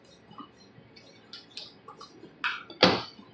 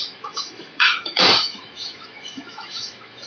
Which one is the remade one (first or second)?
second